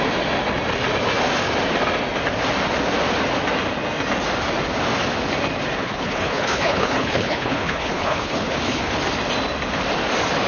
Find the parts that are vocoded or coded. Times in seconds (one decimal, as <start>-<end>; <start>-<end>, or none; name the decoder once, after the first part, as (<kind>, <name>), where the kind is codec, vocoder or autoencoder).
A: 5.8-8.9 (codec, HILCodec)